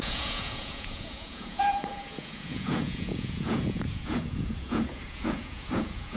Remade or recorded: remade